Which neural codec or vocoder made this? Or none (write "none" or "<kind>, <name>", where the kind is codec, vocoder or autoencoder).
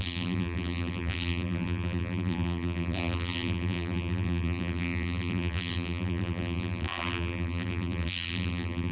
vocoder, BigVGAN v2